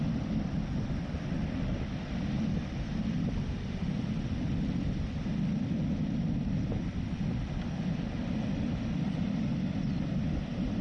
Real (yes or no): yes